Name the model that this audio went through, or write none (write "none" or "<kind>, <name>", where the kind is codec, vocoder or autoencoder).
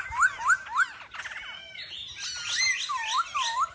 none